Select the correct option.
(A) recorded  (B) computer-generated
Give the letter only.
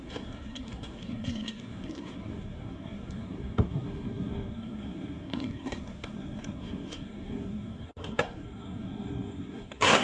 B